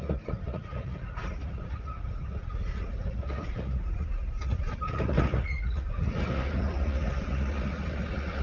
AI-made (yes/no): yes